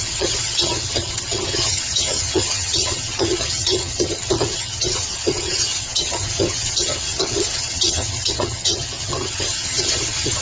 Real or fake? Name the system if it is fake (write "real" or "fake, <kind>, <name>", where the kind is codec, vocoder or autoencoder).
fake, vocoder, HiFi-GAN